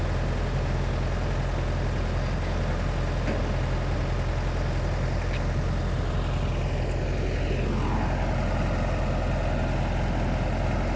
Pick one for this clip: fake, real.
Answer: real